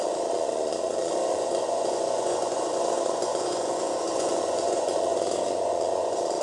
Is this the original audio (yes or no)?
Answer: no